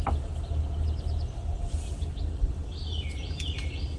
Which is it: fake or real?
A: real